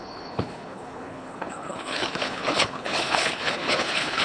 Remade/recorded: remade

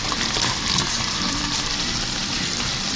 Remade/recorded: remade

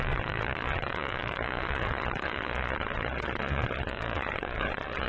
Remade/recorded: remade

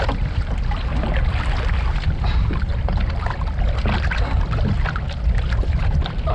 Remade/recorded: recorded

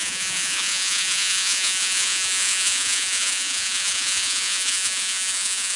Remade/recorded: remade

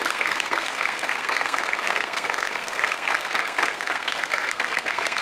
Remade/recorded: remade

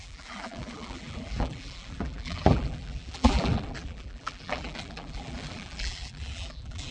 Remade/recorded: remade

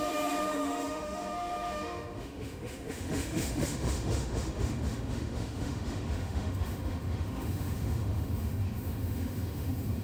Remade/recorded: remade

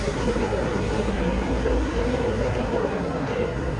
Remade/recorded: remade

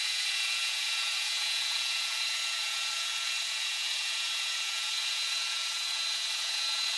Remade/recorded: remade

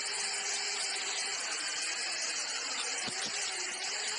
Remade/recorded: recorded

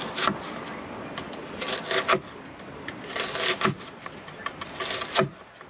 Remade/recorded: recorded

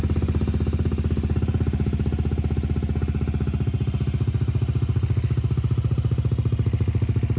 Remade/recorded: recorded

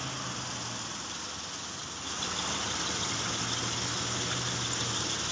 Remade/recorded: recorded